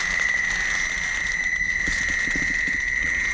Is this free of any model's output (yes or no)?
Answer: yes